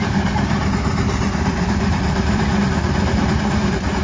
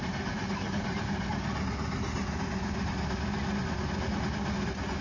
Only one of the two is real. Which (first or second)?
second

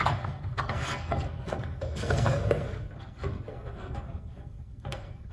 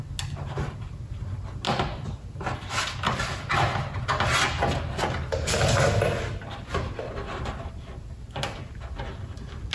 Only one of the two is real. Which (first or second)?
second